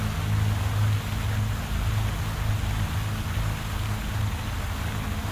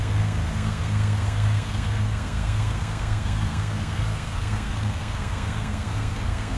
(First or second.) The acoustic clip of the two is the first